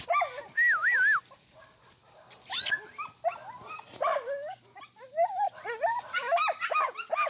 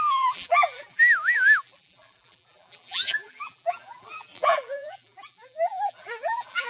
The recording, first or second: first